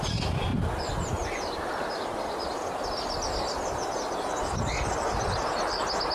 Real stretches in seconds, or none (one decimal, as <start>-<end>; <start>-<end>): 0.0-6.1